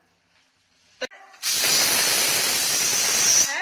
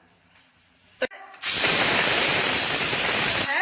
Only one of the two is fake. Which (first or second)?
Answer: second